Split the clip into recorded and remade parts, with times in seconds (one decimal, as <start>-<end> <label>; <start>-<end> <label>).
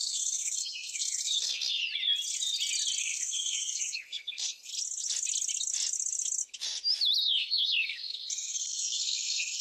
0.0-1.8 remade; 1.8-3.0 recorded; 3.0-4.7 remade; 4.7-7.2 recorded; 7.2-9.6 remade